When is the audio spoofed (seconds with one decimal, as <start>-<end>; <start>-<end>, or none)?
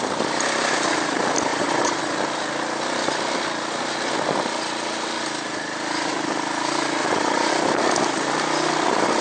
1.5-2.0; 7.0-7.5